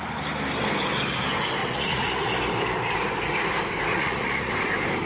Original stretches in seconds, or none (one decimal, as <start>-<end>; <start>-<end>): 0.0-1.6; 2.3-3.9; 4.5-5.1